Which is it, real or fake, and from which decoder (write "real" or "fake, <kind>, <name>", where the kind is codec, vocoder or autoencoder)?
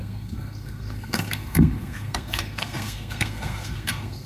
fake, codec, SNAC